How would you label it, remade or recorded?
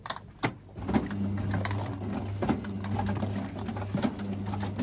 recorded